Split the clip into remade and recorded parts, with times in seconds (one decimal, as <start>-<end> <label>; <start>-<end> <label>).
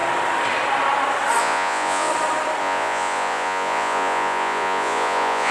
0.0-1.4 recorded; 1.4-2.1 remade; 2.1-2.6 recorded; 2.6-5.5 remade